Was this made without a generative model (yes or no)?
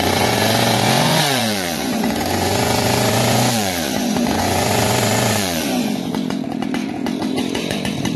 no